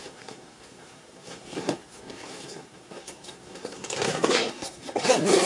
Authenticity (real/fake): fake